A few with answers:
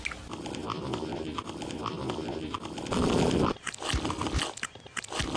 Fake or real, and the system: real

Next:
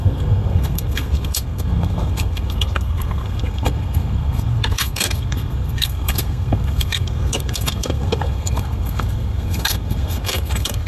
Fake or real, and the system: fake, codec, SNAC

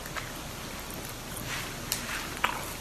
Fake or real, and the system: real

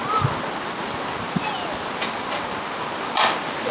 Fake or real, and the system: real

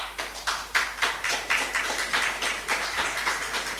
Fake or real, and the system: real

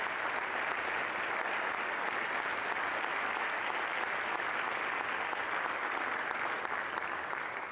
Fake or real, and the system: real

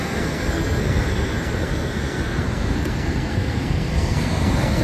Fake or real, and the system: fake, codec, SNAC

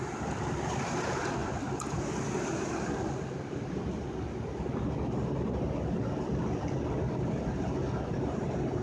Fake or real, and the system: real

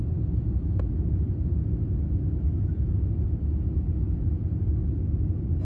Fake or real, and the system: real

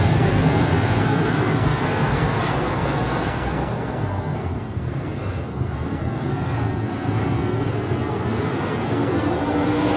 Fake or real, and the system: fake, codec, SNAC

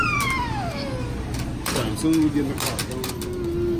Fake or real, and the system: real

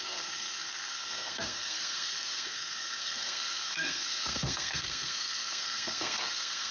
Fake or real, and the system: fake, codec, SNAC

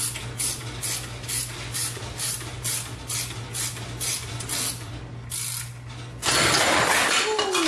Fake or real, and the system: real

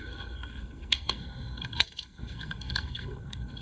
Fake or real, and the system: fake, codec, SNAC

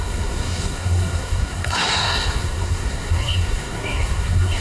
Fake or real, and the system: fake, codec, SNAC